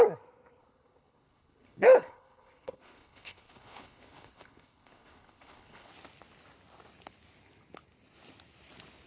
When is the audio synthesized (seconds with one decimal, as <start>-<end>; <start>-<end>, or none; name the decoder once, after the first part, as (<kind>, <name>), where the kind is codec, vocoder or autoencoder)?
0.6-5.9 (codec, HILCodec)